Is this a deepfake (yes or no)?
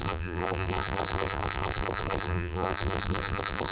yes